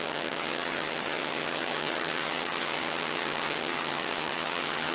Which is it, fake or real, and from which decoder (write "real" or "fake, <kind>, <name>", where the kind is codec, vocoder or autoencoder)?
fake, vocoder, HiFi-GAN